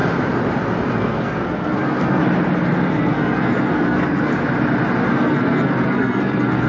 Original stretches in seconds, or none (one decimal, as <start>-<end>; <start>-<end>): 0.0-0.9; 2.2-2.9; 4.3-5.1